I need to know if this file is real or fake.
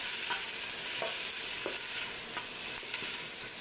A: real